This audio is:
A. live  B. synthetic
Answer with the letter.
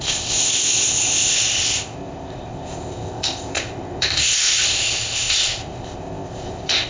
B